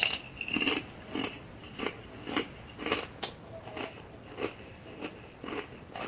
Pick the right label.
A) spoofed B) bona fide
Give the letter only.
B